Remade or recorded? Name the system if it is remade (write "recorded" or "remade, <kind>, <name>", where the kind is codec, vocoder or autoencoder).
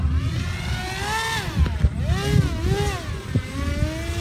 recorded